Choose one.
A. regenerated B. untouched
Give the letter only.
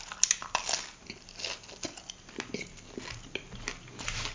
B